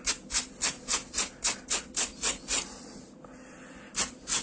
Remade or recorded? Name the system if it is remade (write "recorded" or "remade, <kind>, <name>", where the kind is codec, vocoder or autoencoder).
recorded